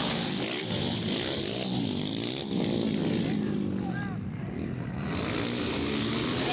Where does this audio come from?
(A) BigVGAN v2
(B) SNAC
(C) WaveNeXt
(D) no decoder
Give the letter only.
D